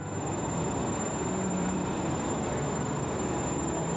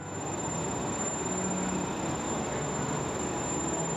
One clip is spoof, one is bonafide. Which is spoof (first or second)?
first